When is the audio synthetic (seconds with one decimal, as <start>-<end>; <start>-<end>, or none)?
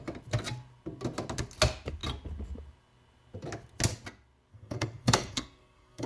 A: 4.5-6.1